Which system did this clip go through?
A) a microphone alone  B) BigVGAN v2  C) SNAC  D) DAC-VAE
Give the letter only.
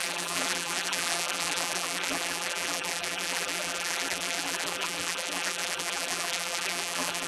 B